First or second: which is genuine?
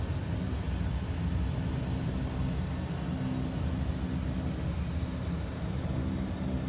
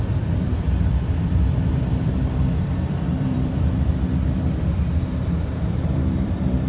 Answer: first